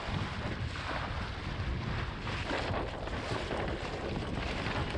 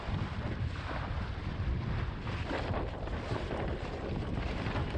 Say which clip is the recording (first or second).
first